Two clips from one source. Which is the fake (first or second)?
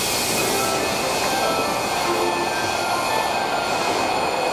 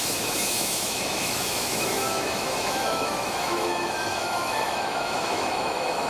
second